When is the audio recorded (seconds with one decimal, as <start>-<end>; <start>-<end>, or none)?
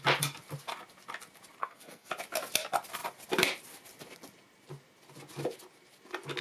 0.0-1.6; 2.1-6.4